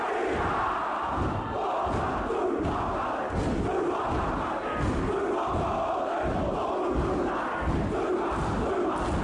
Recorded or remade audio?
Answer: recorded